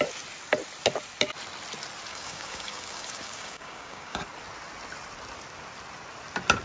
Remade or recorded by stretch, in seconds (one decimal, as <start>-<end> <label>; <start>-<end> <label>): 0.0-2.1 recorded; 2.1-4.2 remade; 4.2-6.6 recorded